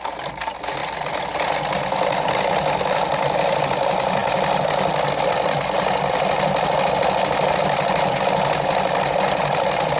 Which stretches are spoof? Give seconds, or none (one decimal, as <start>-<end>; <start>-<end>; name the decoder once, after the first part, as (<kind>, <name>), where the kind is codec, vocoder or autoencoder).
none